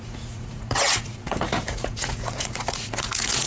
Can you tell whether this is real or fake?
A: fake